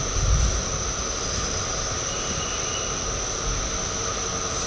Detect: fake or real real